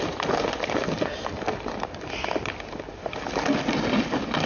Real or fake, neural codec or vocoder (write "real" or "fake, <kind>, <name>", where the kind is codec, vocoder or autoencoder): real